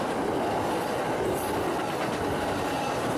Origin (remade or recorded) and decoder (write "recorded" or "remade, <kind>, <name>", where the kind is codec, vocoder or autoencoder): recorded